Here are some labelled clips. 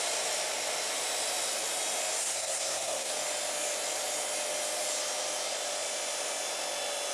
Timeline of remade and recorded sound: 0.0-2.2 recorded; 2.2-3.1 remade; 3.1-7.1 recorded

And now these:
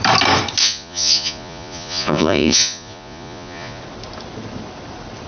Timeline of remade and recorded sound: 0.0-0.6 recorded; 0.6-3.8 remade; 3.8-5.3 recorded

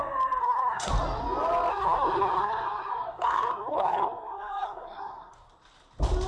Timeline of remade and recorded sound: 0.0-0.4 recorded; 0.4-0.9 remade; 0.9-1.7 recorded; 1.7-5.5 remade; 5.5-6.3 recorded

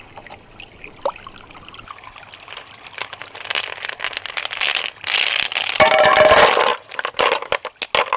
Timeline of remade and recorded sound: 0.0-6.7 recorded; 6.7-7.4 remade; 7.4-8.2 recorded